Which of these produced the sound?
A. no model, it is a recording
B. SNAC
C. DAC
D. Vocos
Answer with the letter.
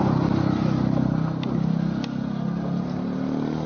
A